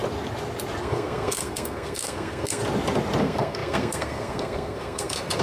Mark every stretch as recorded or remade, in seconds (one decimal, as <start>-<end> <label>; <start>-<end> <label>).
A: 0.0-0.8 recorded; 0.8-2.6 remade; 2.6-3.2 recorded; 3.2-5.4 remade